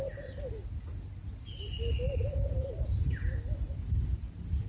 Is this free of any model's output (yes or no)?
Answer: yes